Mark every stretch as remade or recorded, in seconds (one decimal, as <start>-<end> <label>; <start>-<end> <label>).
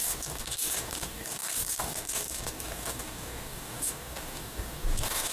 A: 0.0-5.3 remade